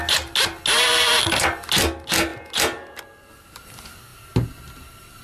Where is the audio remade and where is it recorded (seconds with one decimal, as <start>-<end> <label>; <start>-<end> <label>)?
0.0-5.2 recorded